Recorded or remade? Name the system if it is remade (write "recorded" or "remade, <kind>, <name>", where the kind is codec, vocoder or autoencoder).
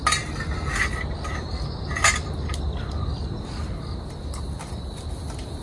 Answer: recorded